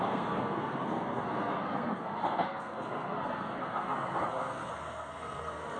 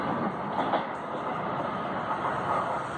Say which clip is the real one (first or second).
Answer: second